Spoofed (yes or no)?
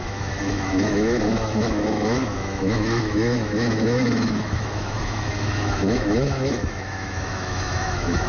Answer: yes